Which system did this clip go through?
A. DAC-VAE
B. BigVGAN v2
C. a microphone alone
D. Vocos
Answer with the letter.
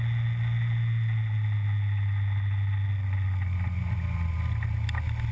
C